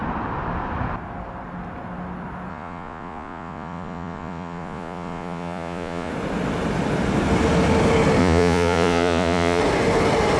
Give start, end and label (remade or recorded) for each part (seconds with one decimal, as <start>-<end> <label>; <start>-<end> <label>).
0.0-2.5 recorded; 2.5-6.1 remade; 6.1-8.2 recorded; 8.2-9.6 remade; 9.6-10.4 recorded